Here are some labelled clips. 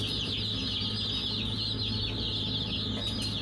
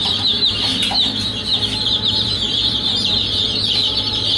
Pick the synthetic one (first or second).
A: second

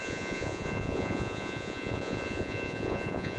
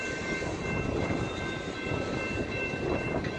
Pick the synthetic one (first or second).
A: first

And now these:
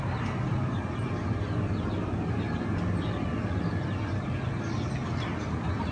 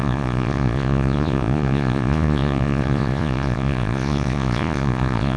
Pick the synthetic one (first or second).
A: second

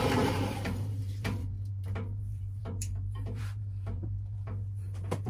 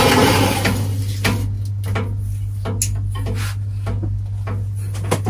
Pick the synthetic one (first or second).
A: first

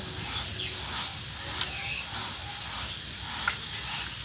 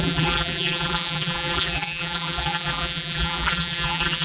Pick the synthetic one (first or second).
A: second